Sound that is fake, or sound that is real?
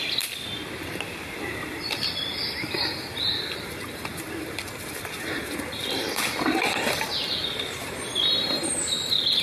fake